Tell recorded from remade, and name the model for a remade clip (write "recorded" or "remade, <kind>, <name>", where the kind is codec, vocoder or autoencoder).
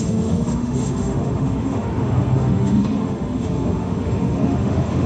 remade, autoencoder, DAC-VAE